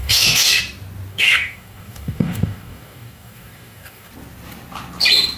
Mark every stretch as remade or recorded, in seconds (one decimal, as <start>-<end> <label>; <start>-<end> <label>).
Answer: 0.0-0.6 remade; 0.6-1.1 recorded; 1.1-4.1 remade; 4.1-5.4 recorded